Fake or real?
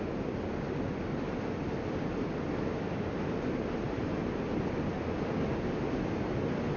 real